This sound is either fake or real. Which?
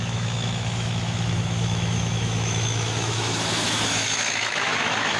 fake